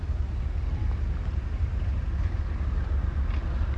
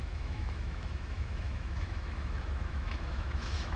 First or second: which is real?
first